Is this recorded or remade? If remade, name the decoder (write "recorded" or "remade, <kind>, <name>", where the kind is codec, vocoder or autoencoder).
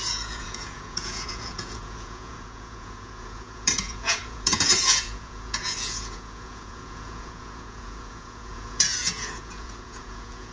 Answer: remade, vocoder, Vocos